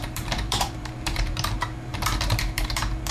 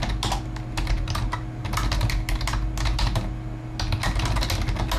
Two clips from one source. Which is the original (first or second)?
second